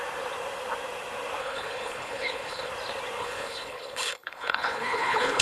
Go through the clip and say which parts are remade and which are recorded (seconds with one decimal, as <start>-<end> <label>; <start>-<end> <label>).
0.0-1.4 recorded; 1.4-2.7 remade; 2.7-3.2 recorded; 3.2-5.4 remade